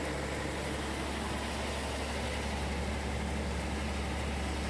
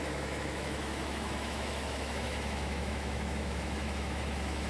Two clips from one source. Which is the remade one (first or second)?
second